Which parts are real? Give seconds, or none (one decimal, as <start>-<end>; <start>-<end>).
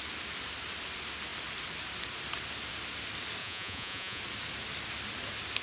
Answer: 0.0-3.4; 4.2-5.6